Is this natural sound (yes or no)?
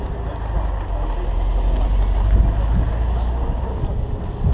yes